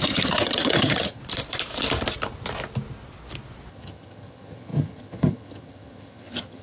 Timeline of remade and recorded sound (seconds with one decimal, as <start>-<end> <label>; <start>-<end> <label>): 0.0-1.2 remade; 1.2-3.7 recorded; 3.7-6.6 remade